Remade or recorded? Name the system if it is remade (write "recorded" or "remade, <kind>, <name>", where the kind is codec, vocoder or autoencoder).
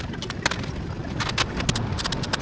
recorded